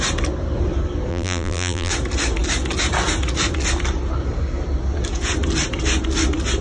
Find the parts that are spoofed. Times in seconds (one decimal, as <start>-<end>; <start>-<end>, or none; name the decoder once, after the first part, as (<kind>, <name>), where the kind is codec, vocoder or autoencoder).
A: 1.1-1.9 (vocoder, BigVGAN v2)